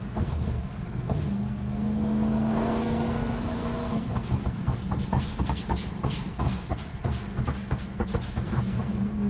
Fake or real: fake